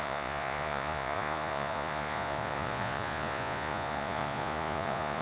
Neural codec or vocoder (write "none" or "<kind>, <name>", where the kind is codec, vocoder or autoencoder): vocoder, Vocos